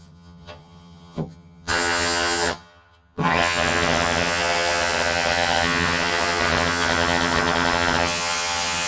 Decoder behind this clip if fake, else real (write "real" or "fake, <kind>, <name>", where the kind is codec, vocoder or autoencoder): fake, vocoder, HiFi-GAN